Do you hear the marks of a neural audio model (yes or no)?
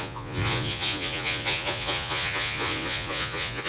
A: yes